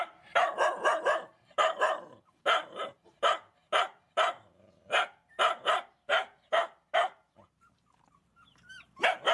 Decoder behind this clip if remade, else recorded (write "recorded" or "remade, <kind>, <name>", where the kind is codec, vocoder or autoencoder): remade, vocoder, BigVGAN v2